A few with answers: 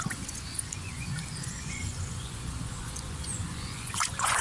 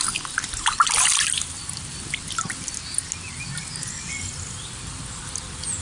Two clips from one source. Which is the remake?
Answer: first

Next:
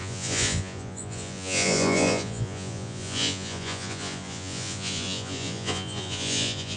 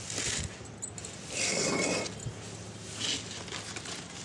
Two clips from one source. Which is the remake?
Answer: first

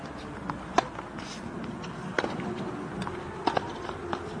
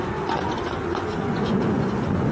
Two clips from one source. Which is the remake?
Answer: second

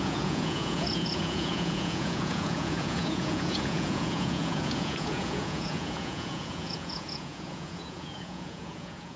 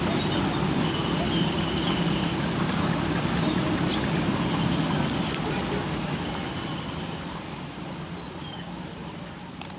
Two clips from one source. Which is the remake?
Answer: first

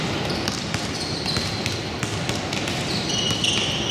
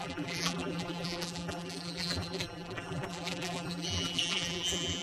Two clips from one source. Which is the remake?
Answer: second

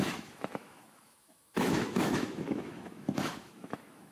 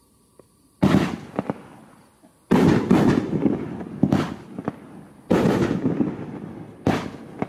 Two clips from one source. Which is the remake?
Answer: first